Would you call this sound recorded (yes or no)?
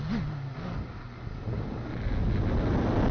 yes